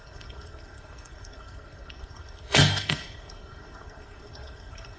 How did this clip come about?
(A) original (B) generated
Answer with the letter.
B